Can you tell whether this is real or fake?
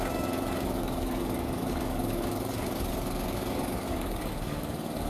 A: fake